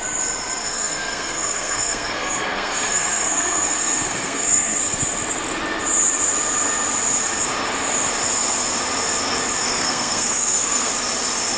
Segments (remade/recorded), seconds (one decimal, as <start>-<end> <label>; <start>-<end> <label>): 0.0-0.6 recorded; 0.6-4.8 remade; 4.8-9.6 recorded; 9.6-10.9 remade; 10.9-11.6 recorded